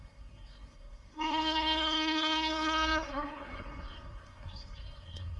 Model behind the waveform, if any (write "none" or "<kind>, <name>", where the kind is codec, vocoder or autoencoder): codec, SNAC